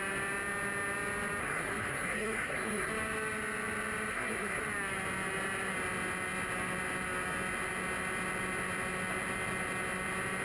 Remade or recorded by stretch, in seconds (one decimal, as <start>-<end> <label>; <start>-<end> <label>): 0.0-1.4 recorded; 1.4-2.9 remade; 2.9-4.1 recorded; 4.1-4.6 remade; 4.6-10.4 recorded